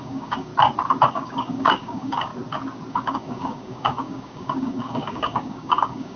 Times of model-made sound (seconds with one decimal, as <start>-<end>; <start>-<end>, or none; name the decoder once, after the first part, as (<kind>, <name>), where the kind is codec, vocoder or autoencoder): 0.0-0.5 (codec, DAC); 1.1-2.3; 2.9-6.2